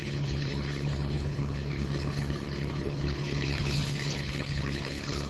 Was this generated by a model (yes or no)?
yes